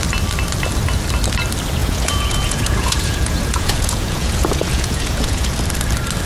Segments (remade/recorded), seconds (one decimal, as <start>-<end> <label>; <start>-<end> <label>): 0.0-1.8 recorded; 1.8-5.6 remade; 5.6-6.3 recorded

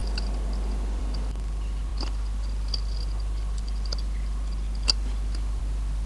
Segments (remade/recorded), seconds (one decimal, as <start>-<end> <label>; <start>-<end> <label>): 0.0-6.1 recorded

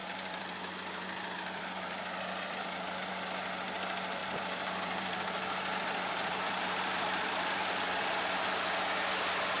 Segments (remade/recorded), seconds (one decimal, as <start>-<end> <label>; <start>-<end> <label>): 0.0-3.1 remade; 3.1-4.2 recorded; 4.2-8.0 remade; 8.0-9.6 recorded